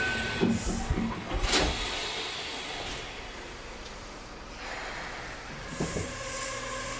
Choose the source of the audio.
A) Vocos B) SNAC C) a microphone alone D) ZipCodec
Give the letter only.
C